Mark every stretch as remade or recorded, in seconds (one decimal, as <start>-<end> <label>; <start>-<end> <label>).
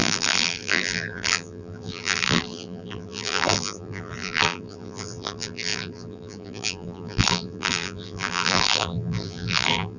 0.0-10.0 remade